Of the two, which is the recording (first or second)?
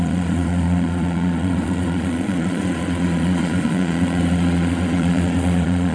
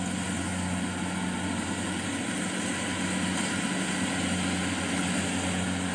second